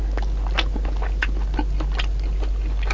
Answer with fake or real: real